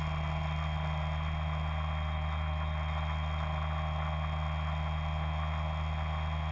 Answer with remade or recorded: recorded